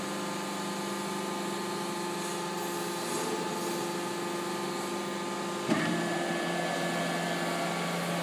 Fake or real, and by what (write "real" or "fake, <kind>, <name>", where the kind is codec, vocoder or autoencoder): real